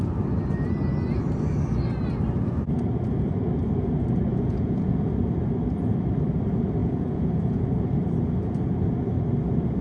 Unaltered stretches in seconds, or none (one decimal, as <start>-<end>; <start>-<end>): 0.0-4.3; 5.1-6.8; 7.6-9.8